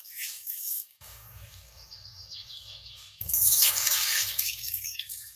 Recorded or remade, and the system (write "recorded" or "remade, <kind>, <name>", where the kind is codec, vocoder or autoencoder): remade, codec, DAC